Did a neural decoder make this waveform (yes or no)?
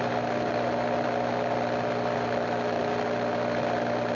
no